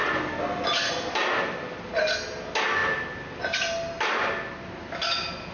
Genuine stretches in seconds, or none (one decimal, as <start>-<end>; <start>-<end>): 0.0-5.5